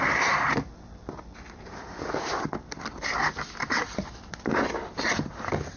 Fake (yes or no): no